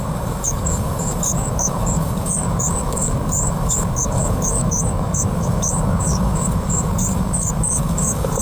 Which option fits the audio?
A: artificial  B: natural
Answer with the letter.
A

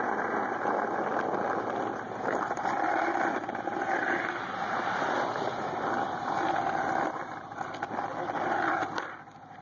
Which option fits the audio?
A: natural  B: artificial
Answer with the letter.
A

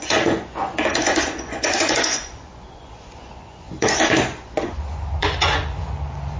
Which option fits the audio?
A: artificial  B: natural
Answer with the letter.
A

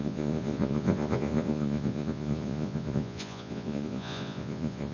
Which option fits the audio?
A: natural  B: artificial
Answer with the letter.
B